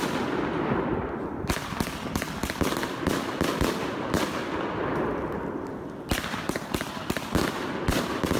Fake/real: fake